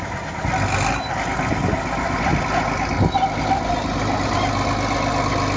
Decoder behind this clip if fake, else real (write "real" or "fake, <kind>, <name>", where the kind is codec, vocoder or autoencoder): real